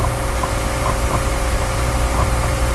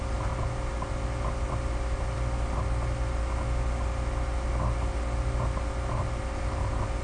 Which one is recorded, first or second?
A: second